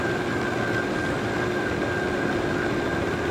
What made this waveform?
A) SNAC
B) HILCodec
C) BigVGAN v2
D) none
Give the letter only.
D